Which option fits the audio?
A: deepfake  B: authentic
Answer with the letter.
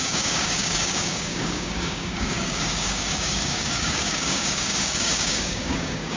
A